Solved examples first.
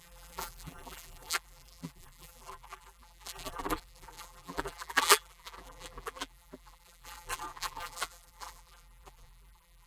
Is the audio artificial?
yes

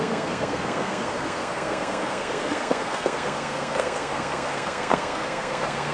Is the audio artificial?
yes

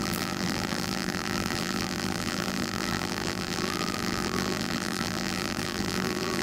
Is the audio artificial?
yes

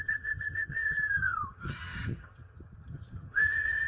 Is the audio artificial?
yes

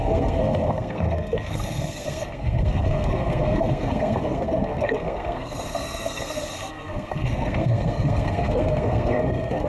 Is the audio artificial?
yes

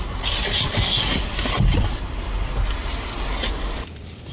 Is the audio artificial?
no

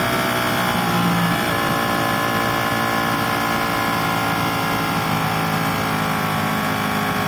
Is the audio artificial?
no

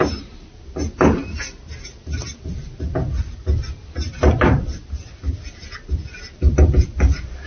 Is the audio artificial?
no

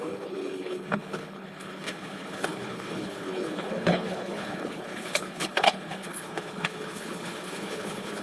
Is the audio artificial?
yes